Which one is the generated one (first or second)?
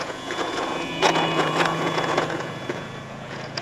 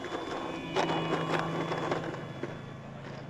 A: first